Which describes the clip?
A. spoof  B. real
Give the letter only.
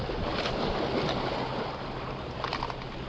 B